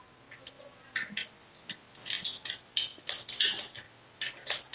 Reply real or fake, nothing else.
real